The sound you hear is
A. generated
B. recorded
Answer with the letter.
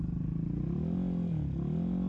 B